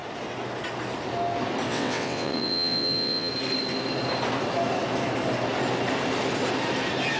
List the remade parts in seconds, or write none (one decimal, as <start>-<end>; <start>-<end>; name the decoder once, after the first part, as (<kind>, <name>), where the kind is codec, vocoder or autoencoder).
1.7-3.3 (vocoder, WaveNeXt)